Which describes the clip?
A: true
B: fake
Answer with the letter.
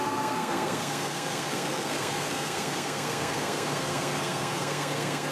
B